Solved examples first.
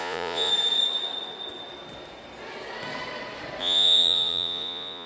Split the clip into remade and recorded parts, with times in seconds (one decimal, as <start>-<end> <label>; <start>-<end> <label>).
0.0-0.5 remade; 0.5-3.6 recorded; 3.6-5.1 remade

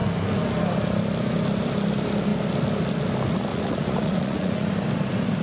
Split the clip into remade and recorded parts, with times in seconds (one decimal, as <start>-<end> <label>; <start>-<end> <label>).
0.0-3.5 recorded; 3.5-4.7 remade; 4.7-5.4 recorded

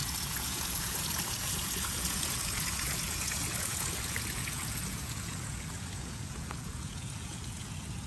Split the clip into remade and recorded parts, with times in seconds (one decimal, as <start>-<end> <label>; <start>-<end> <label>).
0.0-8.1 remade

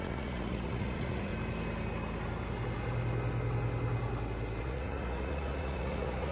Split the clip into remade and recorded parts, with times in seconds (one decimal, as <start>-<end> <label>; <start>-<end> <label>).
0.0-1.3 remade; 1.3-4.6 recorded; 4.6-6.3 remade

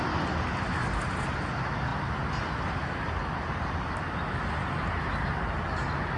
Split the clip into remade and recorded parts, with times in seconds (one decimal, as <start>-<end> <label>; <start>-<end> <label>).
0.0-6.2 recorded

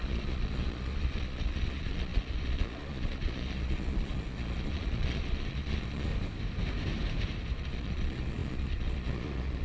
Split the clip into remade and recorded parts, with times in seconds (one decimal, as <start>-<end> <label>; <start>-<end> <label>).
0.0-6.1 remade; 6.1-7.6 recorded; 7.6-9.6 remade

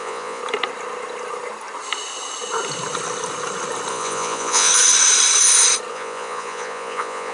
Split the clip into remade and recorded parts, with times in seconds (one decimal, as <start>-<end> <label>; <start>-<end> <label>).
0.0-0.4 remade; 0.4-3.9 recorded; 3.9-4.7 remade; 4.7-5.9 recorded; 5.9-7.3 remade

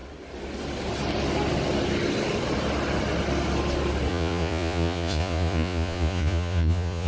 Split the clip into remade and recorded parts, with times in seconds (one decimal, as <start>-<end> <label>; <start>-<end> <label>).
0.0-4.1 recorded; 4.1-7.1 remade